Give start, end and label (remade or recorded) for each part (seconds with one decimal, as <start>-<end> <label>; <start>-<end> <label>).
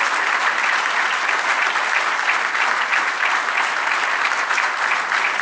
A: 0.0-5.4 recorded